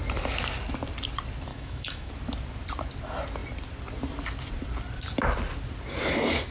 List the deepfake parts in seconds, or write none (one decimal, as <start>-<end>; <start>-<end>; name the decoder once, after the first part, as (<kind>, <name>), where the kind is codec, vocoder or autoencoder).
1.5-2.1 (autoencoder, DAC-VAE)